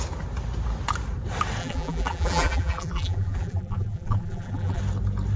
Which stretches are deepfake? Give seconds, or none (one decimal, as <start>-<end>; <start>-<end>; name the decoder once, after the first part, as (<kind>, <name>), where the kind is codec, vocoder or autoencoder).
1.6-4.8 (vocoder, BigVGAN v2)

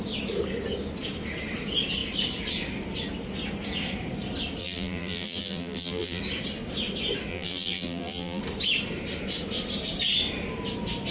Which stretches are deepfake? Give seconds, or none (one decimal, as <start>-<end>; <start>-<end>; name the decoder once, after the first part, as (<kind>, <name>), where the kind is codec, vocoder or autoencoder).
4.6-6.2 (vocoder, BigVGAN v2); 7.3-8.4

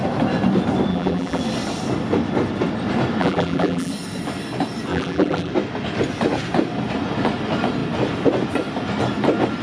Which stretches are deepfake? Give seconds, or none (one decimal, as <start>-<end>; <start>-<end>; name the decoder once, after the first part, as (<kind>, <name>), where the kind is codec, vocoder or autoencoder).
0.9-1.4 (vocoder, BigVGAN v2); 3.2-3.9; 4.9-5.5

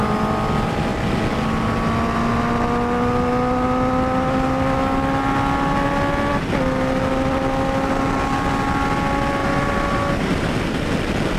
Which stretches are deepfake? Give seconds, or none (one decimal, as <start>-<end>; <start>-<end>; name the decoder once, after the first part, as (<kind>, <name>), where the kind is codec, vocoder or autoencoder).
9.4-10.5 (vocoder, BigVGAN v2)

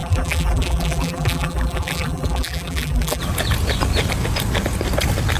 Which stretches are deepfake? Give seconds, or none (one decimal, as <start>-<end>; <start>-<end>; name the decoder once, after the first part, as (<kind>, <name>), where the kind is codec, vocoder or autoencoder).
0.0-3.2 (vocoder, BigVGAN v2)